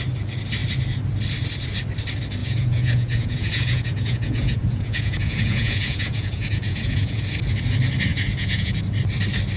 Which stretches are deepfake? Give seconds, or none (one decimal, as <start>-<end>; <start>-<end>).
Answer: 2.4-7.2; 8.1-8.7